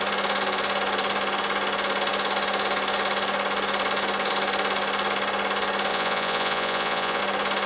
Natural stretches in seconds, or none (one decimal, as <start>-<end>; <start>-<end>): 0.0-5.9; 7.2-7.7